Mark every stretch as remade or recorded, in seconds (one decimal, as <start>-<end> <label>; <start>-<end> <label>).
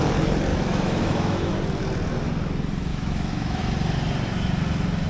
0.0-0.5 recorded; 0.5-1.6 remade; 1.6-2.9 recorded; 2.9-3.6 remade; 3.6-5.1 recorded